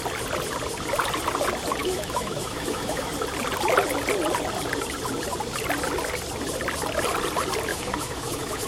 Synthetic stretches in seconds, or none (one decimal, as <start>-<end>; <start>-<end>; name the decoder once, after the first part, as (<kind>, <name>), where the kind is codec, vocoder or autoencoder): 1.8-3.1 (autoencoder, DAC-VAE); 7.7-8.7